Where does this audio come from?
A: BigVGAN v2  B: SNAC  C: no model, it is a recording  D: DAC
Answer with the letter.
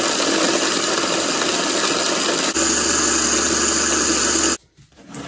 C